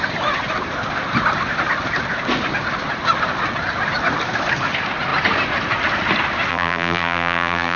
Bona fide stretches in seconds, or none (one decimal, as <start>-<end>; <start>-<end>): 0.0-6.5